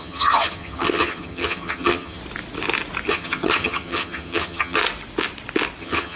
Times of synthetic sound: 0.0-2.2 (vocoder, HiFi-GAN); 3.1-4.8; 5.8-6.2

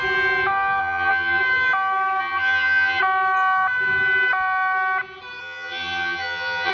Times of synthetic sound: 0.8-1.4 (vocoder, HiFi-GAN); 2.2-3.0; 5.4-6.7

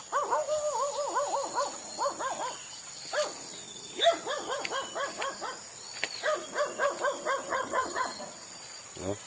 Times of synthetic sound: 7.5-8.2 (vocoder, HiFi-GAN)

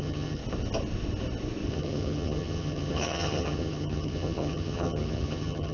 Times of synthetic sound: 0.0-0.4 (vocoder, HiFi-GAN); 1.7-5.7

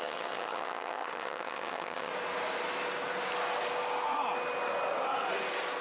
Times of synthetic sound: 0.0-2.1 (vocoder, HiFi-GAN)

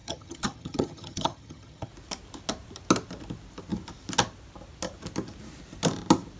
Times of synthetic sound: 0.0-1.9 (vocoder, HiFi-GAN)

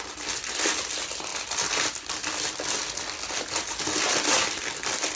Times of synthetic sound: none

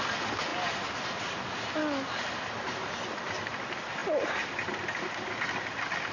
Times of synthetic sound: none